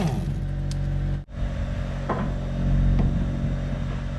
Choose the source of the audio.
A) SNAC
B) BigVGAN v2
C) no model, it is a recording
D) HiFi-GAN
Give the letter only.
C